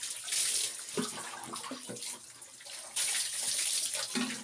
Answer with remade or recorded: recorded